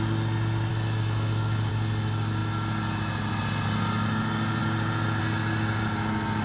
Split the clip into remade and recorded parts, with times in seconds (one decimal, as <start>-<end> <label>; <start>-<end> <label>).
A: 0.0-0.7 recorded; 0.7-1.7 remade; 1.7-6.4 recorded